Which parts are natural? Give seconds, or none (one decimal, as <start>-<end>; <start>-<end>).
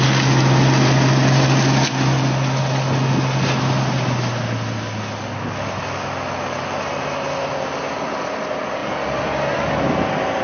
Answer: 0.0-10.4